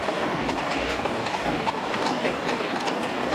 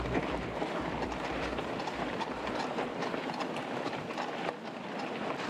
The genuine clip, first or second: second